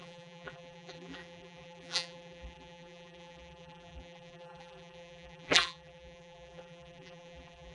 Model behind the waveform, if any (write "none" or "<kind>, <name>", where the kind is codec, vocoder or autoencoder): vocoder, BigVGAN v2